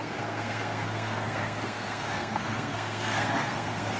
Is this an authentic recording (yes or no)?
no